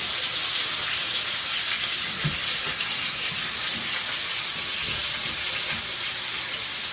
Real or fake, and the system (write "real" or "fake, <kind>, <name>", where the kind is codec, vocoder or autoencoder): real